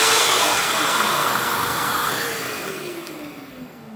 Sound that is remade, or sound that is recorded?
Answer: remade